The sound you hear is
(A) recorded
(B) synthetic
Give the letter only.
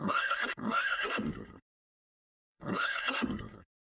B